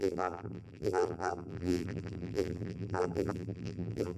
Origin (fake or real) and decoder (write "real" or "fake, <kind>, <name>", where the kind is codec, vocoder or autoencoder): fake, vocoder, BigVGAN v2